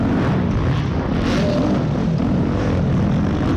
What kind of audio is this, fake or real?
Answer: real